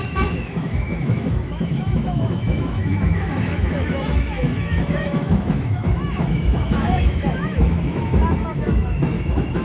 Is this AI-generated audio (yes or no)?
yes